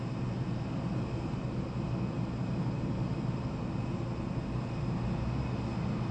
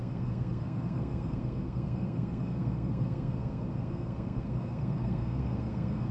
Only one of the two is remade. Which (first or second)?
second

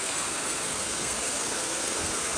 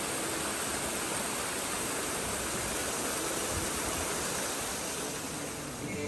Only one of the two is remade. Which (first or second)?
first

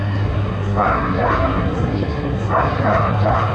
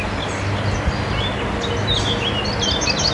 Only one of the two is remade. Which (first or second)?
first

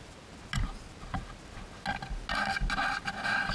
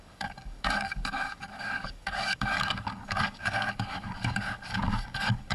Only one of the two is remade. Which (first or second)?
second